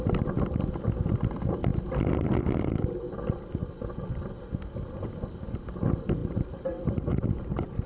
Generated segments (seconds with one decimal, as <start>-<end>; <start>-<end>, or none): 6.2-7.9